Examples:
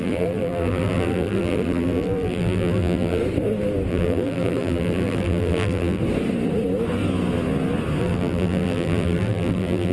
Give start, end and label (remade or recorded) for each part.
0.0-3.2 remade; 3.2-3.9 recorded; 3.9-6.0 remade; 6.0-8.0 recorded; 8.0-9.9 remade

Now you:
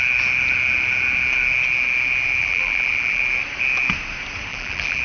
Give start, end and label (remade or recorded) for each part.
0.0-2.4 recorded; 2.4-3.2 remade; 3.2-4.5 recorded; 4.5-5.0 remade

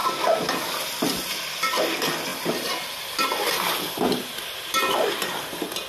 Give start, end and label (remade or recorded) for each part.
0.0-1.8 remade; 1.8-2.3 recorded; 2.3-5.4 remade; 5.4-5.9 recorded

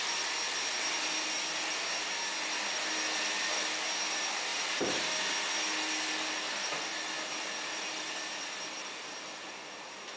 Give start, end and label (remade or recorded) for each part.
0.0-4.5 recorded; 4.5-5.1 remade; 5.1-10.2 recorded

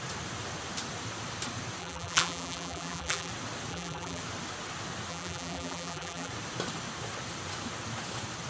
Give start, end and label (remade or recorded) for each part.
0.0-1.8 recorded; 1.8-3.3 remade; 3.3-3.7 recorded; 3.7-4.2 remade; 4.2-5.1 recorded; 5.1-6.3 remade; 6.3-8.5 recorded

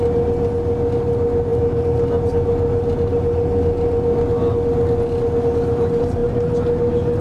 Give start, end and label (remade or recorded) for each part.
0.0-7.2 recorded

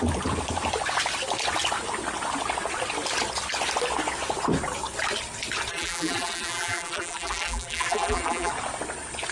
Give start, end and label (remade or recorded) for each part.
0.0-5.7 recorded; 5.7-8.5 remade; 8.5-9.3 recorded